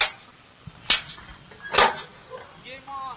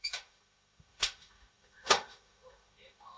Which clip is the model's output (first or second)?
second